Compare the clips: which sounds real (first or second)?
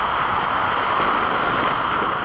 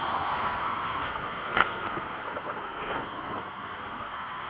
first